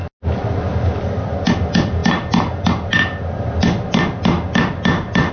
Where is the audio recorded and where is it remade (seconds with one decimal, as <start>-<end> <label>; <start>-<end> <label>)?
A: 0.0-5.3 recorded